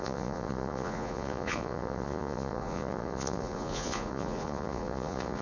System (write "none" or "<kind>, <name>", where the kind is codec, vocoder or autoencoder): vocoder, Vocos